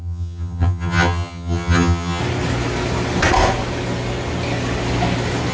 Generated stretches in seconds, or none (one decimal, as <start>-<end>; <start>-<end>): 0.0-2.2